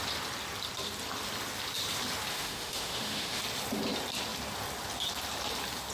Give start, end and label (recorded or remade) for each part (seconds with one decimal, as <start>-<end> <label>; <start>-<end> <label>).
0.0-2.3 recorded; 2.3-3.4 remade; 3.4-5.9 recorded